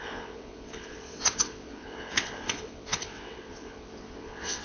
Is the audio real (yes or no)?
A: no